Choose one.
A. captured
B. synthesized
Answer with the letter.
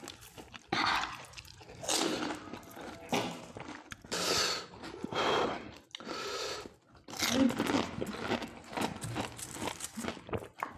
A